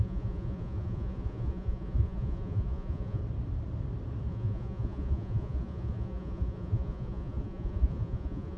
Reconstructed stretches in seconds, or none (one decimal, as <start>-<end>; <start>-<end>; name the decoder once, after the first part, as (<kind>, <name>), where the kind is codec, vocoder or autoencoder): 0.0-3.2 (vocoder, Vocos); 4.3-8.6